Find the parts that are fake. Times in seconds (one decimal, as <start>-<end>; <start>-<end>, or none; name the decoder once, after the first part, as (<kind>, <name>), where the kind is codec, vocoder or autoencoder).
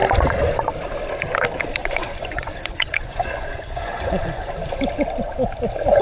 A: 1.8-4.5 (vocoder, Vocos)